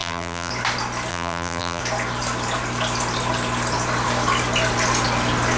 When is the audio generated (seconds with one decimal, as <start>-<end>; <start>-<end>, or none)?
0.0-0.5; 1.1-1.8